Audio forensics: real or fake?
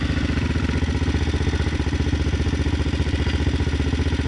real